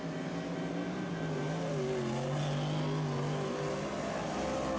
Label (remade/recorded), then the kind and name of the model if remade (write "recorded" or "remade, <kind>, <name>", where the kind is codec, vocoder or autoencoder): recorded